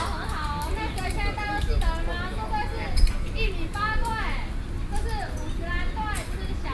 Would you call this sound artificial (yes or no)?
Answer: no